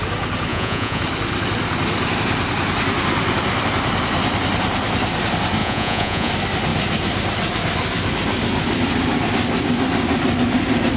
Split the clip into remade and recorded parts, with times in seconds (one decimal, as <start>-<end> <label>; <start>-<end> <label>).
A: 0.0-0.5 recorded; 0.5-1.0 remade; 1.0-5.6 recorded; 5.6-6.3 remade; 6.3-11.0 recorded